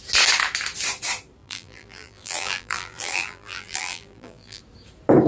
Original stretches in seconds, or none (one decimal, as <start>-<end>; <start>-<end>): 0.0-1.4; 4.6-5.3